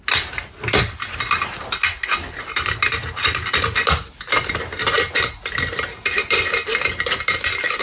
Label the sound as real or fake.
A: real